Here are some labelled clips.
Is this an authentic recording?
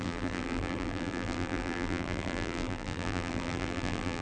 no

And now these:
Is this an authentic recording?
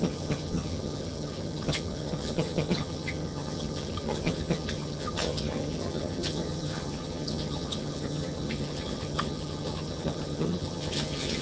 no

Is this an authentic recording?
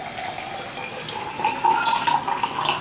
yes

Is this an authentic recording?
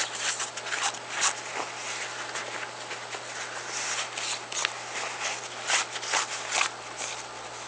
yes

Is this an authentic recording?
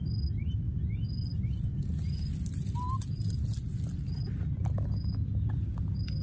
yes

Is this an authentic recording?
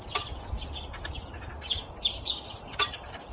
yes